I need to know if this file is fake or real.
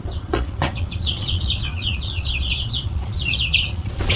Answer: fake